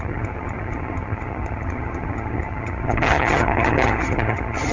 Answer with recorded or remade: remade